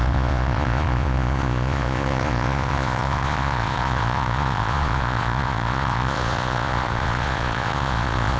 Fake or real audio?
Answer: fake